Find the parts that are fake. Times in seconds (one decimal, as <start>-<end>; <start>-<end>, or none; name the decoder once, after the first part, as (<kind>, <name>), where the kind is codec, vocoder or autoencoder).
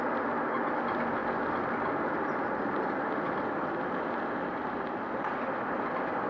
none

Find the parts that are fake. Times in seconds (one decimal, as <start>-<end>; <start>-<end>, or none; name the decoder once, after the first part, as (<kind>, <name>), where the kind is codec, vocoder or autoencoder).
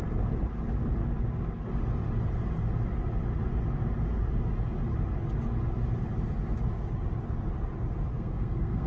8.1-8.9 (codec, SNAC)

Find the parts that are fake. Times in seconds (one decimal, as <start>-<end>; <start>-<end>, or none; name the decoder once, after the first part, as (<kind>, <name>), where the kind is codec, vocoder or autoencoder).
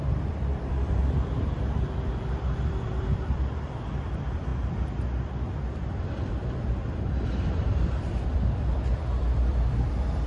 0.0-10.3 (vocoder, BigVGAN v2)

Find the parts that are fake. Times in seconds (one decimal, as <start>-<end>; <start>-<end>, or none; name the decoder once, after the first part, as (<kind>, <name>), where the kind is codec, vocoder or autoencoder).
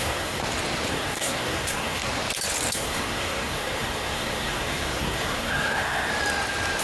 0.0-0.4 (codec, SNAC); 0.9-2.0; 2.7-6.1